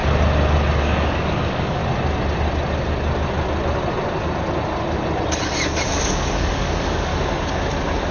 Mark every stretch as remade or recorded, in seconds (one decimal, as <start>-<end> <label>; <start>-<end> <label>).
0.0-0.8 recorded; 0.8-1.8 remade; 1.8-5.9 recorded; 5.9-7.1 remade; 7.1-8.1 recorded